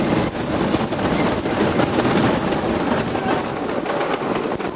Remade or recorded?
recorded